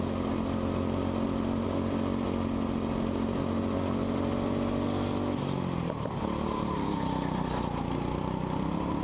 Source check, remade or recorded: recorded